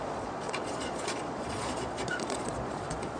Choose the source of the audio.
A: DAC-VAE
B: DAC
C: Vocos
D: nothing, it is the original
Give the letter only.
C